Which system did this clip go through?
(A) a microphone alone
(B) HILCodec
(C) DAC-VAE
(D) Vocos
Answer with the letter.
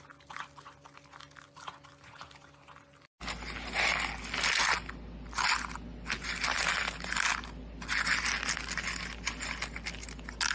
A